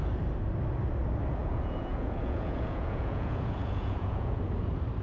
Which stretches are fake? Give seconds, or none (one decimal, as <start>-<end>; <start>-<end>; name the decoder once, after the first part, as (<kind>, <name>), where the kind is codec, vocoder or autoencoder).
1.4-4.4 (vocoder, Vocos)